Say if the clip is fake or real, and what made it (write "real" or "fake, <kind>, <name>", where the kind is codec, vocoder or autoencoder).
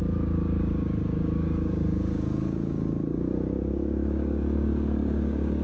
fake, codec, DAC